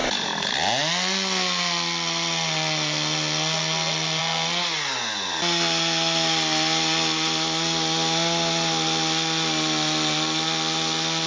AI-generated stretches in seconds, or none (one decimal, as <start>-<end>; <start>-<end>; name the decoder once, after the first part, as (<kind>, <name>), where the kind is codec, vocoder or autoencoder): none